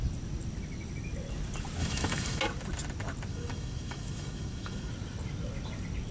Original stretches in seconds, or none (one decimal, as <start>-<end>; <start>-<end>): 0.0-1.8; 2.4-3.3; 4.9-6.1